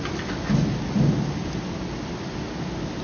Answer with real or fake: real